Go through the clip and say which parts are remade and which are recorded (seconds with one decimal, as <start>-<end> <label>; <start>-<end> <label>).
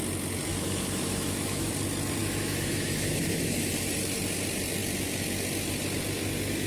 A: 0.0-0.5 recorded; 0.5-1.7 remade; 1.7-2.2 recorded; 2.2-3.7 remade; 3.7-6.7 recorded